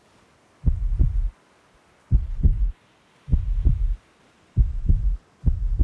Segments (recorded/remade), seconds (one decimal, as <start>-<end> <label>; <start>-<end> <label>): 0.0-2.0 recorded; 2.0-2.7 remade; 2.7-5.8 recorded